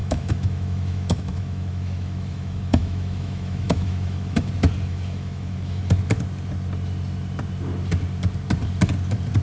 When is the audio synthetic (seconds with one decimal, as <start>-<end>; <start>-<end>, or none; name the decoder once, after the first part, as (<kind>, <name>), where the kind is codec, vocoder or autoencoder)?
0.0-4.5 (autoencoder, DAC-VAE); 4.9-5.8